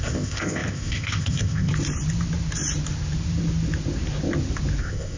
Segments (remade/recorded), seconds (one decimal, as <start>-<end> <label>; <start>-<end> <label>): 0.0-1.7 remade; 1.7-4.8 recorded; 4.8-5.2 remade